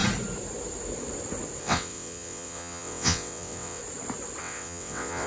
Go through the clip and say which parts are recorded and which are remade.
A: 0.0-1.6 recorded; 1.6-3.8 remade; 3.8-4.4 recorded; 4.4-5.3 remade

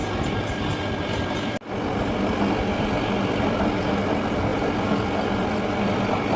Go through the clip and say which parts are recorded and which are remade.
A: 0.0-6.4 recorded

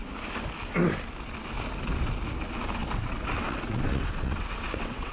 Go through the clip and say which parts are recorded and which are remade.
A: 0.0-2.8 recorded; 2.8-5.1 remade

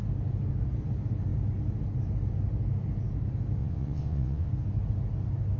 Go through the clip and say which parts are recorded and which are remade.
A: 0.0-3.6 recorded; 3.6-4.5 remade; 4.5-5.6 recorded

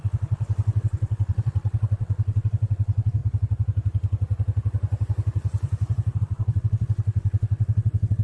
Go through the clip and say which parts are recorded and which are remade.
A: 0.0-3.2 remade; 3.2-6.2 recorded; 6.2-8.2 remade

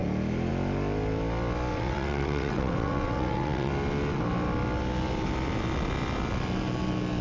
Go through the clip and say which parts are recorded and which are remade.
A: 0.0-1.7 recorded; 1.7-3.7 remade; 3.7-7.2 recorded